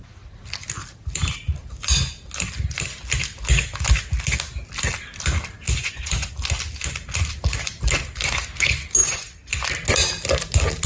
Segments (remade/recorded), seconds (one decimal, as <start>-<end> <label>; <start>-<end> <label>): 0.0-5.8 recorded; 5.8-6.3 remade; 6.3-9.0 recorded; 9.0-9.6 remade; 9.6-10.9 recorded